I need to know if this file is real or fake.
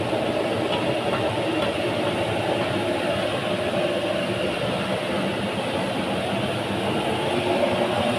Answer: real